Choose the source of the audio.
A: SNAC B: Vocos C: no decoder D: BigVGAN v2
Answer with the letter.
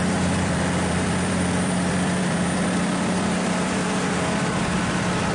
D